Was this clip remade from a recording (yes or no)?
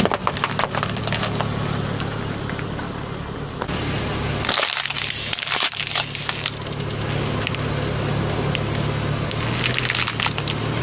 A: no